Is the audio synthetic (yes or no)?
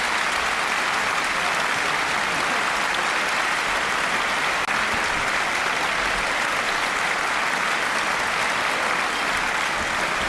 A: no